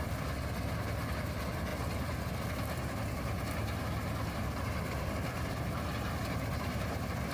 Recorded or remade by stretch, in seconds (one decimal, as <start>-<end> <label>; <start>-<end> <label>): 0.0-7.3 recorded